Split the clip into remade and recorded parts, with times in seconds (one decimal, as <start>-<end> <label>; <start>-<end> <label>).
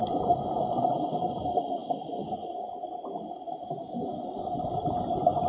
0.0-1.8 remade; 1.8-5.1 recorded; 5.1-5.5 remade